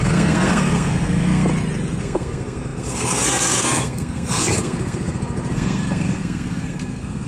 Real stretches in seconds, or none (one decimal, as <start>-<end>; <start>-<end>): 1.5-2.0

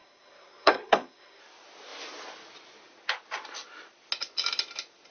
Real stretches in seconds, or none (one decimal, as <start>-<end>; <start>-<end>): 1.4-5.1

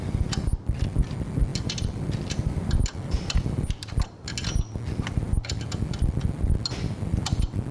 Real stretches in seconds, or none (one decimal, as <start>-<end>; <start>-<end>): 0.0-1.5; 4.0-7.7

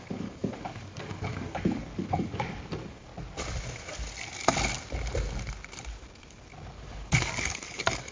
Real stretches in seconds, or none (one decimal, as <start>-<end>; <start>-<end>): 3.1-6.7